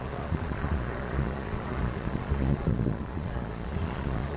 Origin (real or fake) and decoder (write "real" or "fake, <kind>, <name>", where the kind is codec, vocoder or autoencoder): fake, vocoder, Vocos